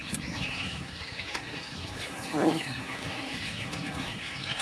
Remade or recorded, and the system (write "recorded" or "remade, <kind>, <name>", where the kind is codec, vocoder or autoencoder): remade, codec, SNAC